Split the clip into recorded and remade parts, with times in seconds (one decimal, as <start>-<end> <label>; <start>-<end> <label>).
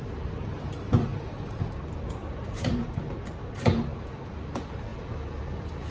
0.0-1.1 recorded; 1.1-1.6 remade; 1.6-2.2 recorded; 2.2-3.3 remade; 3.3-4.9 recorded; 4.9-5.4 remade; 5.4-5.9 recorded